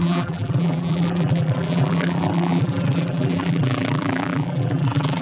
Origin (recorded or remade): remade